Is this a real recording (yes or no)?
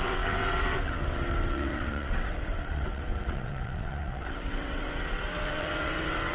no